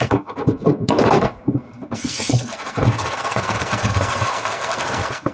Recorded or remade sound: remade